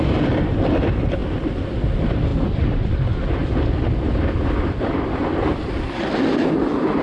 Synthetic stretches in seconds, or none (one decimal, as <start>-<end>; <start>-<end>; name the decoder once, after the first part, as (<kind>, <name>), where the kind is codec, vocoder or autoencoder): 0.0-3.4 (vocoder, BigVGAN v2); 4.8-7.0